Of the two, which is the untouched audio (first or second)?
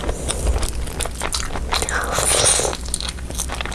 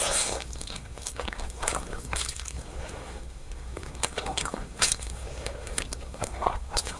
first